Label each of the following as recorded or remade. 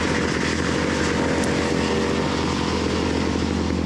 recorded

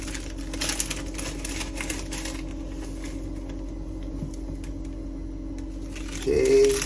recorded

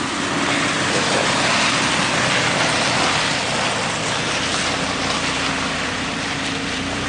recorded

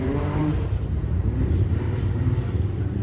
remade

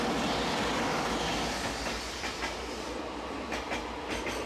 recorded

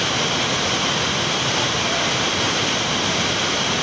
remade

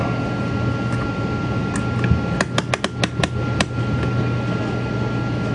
recorded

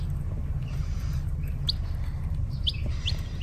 remade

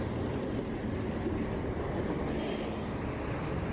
recorded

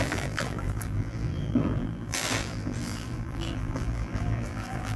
remade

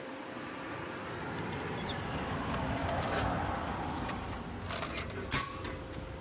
recorded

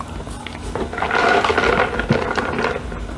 recorded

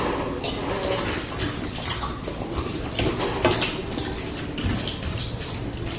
recorded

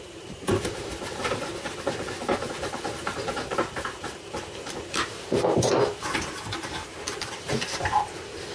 remade